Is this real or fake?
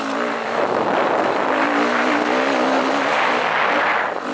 real